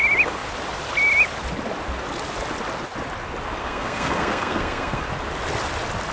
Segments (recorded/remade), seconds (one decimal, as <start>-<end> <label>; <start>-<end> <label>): 0.0-3.6 recorded; 3.6-5.0 remade; 5.0-6.1 recorded

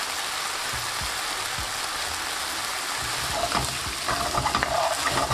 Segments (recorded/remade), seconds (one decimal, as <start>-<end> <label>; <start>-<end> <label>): 0.0-5.3 recorded

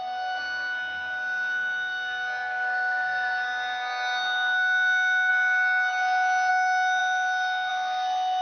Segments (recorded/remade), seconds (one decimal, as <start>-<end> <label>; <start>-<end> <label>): 0.0-5.3 remade; 5.3-6.5 recorded; 6.5-8.4 remade

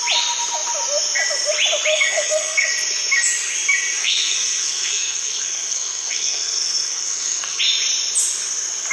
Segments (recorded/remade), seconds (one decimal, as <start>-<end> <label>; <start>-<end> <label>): 0.0-1.9 recorded; 1.9-2.7 remade; 2.7-4.0 recorded; 4.0-7.6 remade; 7.6-8.9 recorded

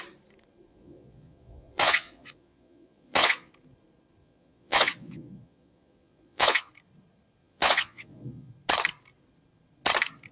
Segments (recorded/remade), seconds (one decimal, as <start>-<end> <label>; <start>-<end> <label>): 0.0-0.7 recorded; 0.7-3.5 remade; 3.5-4.2 recorded; 4.2-6.7 remade; 6.7-7.4 recorded; 7.4-8.5 remade; 8.5-10.3 recorded

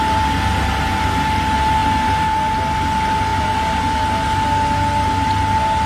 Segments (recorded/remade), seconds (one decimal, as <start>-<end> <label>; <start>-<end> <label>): 0.0-5.9 recorded

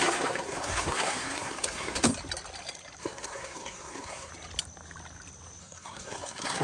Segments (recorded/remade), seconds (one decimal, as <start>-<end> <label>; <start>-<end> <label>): 0.0-2.1 remade; 2.1-3.0 recorded; 3.0-4.3 remade; 4.3-5.6 recorded; 5.6-6.6 remade

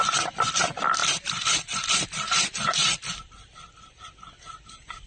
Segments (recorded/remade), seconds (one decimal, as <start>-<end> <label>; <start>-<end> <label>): 0.0-1.0 recorded; 1.0-4.1 remade; 4.1-5.1 recorded